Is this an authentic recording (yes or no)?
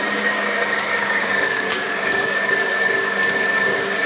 no